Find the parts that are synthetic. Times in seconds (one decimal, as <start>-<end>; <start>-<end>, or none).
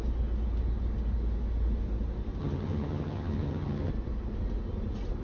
2.4-3.9